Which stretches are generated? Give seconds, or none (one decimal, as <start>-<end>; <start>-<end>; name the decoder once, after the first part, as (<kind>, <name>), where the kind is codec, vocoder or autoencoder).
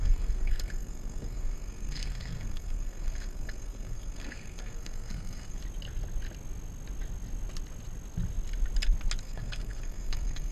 0.0-5.6 (codec, SNAC); 9.2-10.5